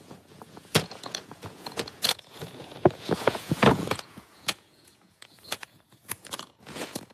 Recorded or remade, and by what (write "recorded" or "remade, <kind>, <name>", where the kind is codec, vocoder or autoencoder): remade, vocoder, Vocos